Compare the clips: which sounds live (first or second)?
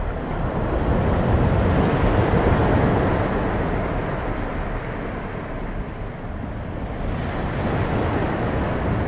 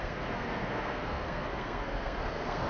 first